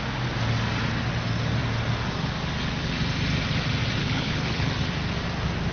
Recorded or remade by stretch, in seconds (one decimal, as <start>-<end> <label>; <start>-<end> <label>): 0.0-4.0 recorded; 4.0-4.7 remade; 4.7-5.7 recorded